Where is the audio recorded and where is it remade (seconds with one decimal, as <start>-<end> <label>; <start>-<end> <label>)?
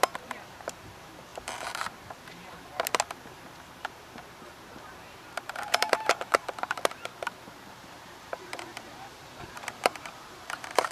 0.0-2.7 remade; 2.7-3.8 recorded; 3.8-7.1 remade; 7.1-7.7 recorded; 7.7-10.9 remade